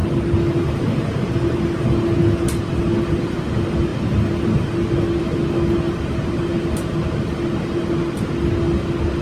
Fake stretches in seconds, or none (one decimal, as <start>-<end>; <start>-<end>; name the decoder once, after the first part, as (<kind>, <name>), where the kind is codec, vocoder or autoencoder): none